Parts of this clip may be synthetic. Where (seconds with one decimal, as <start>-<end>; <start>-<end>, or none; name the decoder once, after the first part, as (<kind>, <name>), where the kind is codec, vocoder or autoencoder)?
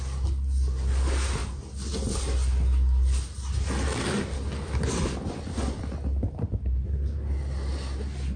none